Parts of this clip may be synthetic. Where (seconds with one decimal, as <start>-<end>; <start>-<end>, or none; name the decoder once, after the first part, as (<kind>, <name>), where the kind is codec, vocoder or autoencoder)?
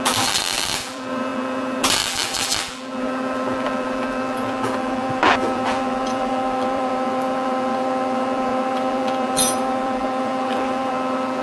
0.0-11.4 (vocoder, BigVGAN v2)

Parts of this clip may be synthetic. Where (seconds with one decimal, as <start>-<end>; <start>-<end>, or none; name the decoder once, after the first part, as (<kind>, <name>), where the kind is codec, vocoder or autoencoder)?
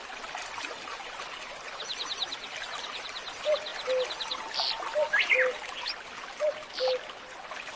none